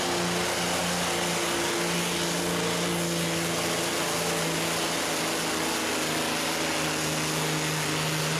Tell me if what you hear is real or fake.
real